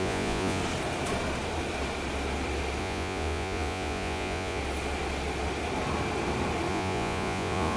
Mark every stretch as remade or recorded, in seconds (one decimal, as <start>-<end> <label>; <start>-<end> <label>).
0.0-0.6 remade; 0.6-2.8 recorded; 2.8-4.6 remade; 4.6-6.7 recorded; 6.7-7.8 remade